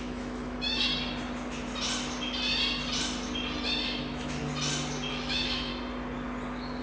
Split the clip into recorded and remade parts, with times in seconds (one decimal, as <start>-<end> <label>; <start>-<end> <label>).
0.0-0.9 remade; 0.9-4.0 recorded; 4.0-4.4 remade; 4.4-5.1 recorded; 5.1-5.7 remade; 5.7-6.8 recorded